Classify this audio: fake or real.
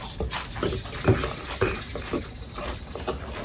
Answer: real